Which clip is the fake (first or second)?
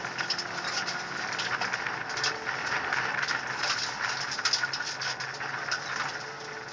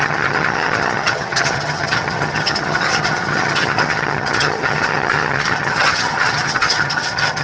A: second